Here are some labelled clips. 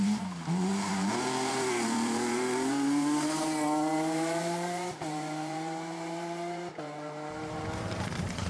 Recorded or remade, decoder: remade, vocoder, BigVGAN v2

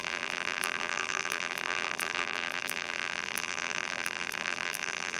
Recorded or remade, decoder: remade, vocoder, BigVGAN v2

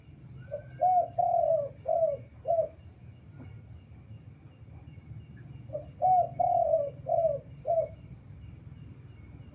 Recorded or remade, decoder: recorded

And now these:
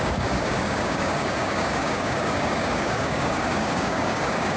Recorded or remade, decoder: remade, codec, DAC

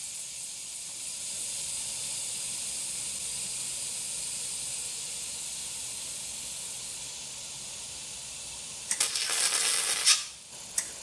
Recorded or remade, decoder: recorded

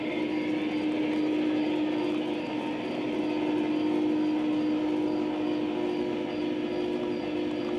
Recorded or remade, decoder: recorded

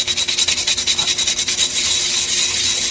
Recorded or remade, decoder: recorded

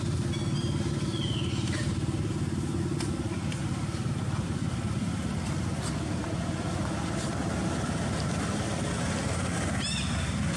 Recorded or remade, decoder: recorded